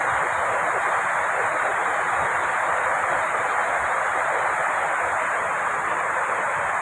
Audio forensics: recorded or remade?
recorded